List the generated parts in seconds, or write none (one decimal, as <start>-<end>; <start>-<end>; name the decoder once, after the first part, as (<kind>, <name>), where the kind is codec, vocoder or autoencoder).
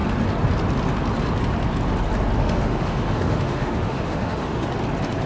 2.4-4.7 (autoencoder, DAC-VAE)